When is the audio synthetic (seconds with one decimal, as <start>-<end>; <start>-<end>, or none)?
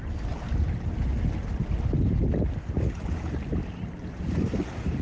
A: none